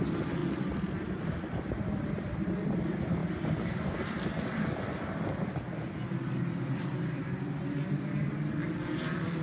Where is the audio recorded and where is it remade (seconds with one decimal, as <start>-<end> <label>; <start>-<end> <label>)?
0.0-9.4 remade

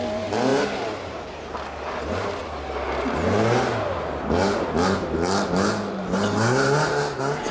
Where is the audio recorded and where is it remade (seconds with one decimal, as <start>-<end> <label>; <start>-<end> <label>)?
0.0-7.5 recorded

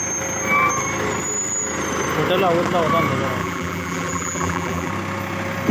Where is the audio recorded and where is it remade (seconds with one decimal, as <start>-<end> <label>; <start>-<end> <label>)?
0.0-3.4 recorded; 3.4-4.9 remade; 4.9-5.7 recorded

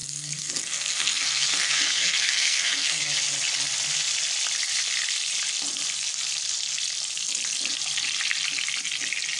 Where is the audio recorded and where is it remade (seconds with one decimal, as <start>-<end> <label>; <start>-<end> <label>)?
0.0-3.0 remade; 3.0-9.4 recorded

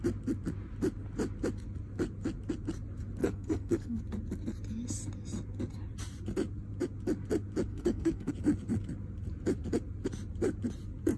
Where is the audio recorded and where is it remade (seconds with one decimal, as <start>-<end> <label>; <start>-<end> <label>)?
0.0-3.2 recorded; 3.2-4.0 remade; 4.0-7.7 recorded; 7.7-8.3 remade; 8.3-11.2 recorded

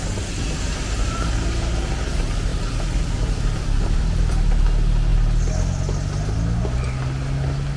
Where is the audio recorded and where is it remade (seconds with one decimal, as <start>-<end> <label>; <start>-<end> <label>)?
0.0-2.5 recorded; 2.5-4.6 remade; 4.6-7.8 recorded